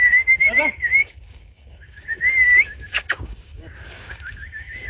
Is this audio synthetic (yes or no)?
yes